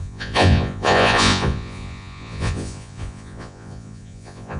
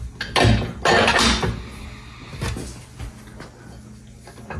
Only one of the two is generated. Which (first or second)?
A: first